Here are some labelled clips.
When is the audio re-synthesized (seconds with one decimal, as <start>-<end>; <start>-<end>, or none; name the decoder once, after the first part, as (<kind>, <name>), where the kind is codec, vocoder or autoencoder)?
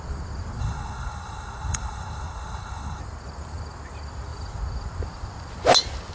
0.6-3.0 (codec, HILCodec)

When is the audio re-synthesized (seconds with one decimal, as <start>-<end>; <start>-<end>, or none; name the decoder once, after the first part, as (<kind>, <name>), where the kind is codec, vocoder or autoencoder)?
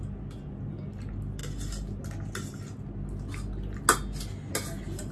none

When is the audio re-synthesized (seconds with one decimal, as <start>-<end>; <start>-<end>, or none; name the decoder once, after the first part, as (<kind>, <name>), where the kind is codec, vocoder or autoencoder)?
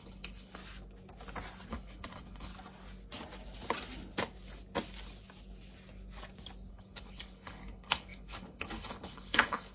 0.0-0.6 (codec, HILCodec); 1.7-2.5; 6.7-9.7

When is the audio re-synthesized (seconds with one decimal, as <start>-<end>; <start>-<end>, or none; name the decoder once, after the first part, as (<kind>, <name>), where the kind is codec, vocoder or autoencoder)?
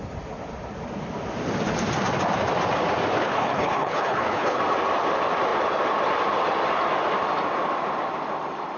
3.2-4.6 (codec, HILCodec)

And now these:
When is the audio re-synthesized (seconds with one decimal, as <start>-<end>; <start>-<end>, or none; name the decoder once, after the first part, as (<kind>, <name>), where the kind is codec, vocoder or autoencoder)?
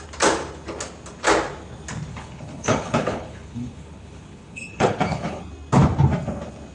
2.1-5.4 (codec, HILCodec)